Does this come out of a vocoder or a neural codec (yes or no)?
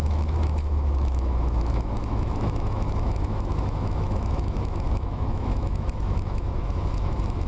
yes